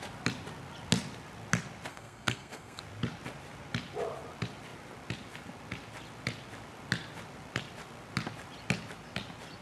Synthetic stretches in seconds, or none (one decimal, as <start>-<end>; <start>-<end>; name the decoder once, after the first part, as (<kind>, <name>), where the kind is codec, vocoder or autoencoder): 1.9-2.8 (codec, SNAC)